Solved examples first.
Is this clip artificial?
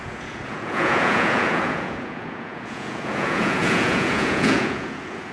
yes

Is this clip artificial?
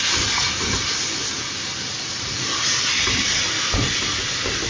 no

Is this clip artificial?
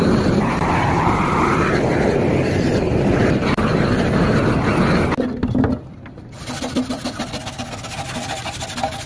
no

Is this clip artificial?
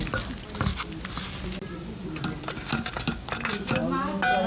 no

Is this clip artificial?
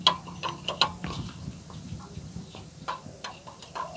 no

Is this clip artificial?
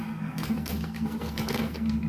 yes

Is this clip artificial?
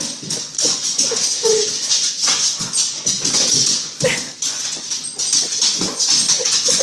yes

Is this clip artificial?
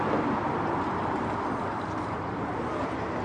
no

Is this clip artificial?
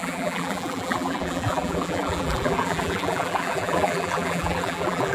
yes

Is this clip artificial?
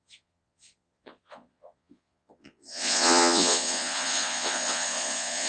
yes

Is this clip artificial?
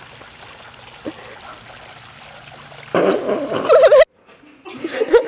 no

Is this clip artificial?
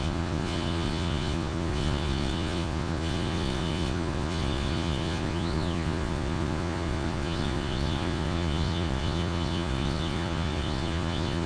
yes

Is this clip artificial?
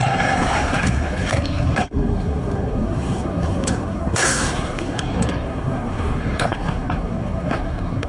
yes